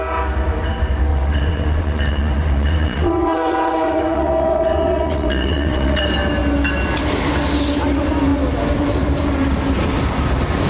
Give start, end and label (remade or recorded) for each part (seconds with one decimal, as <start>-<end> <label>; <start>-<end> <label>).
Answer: 0.0-1.1 recorded; 1.1-6.0 remade; 6.0-10.7 recorded